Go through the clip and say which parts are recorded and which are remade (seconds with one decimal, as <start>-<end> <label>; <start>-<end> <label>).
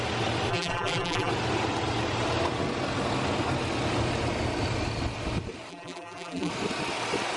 0.0-0.5 recorded; 0.5-1.3 remade; 1.3-5.7 recorded; 5.7-6.5 remade; 6.5-7.4 recorded